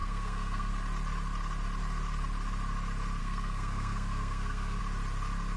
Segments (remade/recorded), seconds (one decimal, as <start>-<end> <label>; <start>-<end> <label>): 0.0-0.7 remade; 0.7-3.2 recorded; 3.2-4.8 remade; 4.8-5.6 recorded